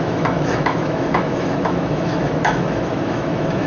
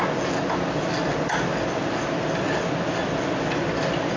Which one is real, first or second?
second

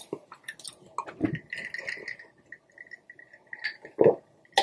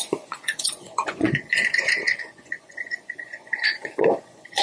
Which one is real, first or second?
first